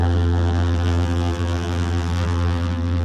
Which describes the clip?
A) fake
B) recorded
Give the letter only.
A